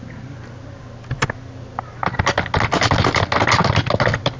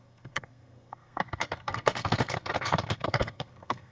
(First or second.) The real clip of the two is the first